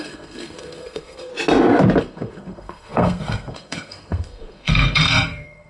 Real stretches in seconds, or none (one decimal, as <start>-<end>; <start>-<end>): 1.3-2.0